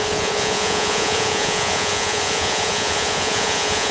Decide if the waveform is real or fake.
fake